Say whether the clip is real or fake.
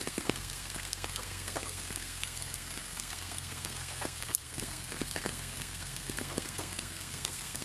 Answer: fake